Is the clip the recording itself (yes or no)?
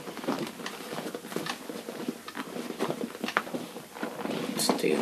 yes